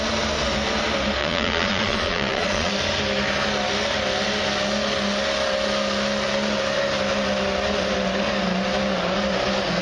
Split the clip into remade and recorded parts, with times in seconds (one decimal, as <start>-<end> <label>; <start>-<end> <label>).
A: 0.0-1.2 recorded; 1.2-2.7 remade; 2.7-9.8 recorded